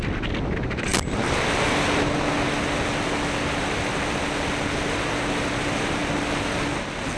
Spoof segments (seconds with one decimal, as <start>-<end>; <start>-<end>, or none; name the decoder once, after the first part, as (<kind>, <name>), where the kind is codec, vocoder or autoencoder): none